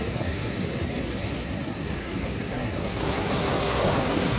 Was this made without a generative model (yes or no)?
no